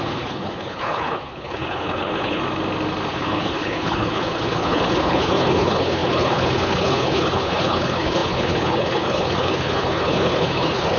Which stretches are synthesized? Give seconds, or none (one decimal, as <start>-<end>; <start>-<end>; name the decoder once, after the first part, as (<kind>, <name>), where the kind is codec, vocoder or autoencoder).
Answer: 0.0-2.4 (codec, HILCodec); 3.1-11.0